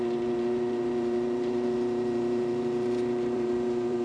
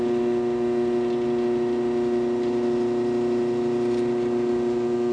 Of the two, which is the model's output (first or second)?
first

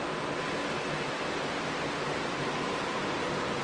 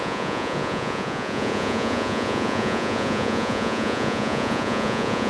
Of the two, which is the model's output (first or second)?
second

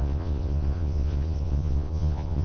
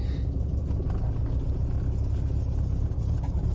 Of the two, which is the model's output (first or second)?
first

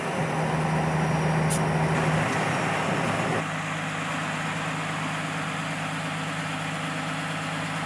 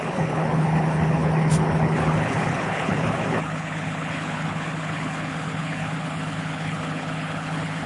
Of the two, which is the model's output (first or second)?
second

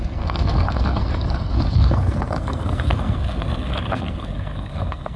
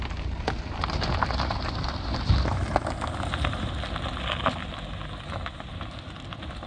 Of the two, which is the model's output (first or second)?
first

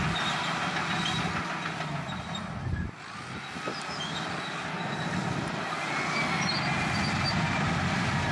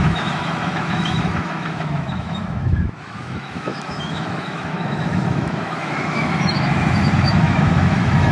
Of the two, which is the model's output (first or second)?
second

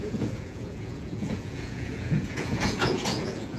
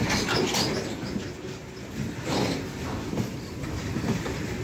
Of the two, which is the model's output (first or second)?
first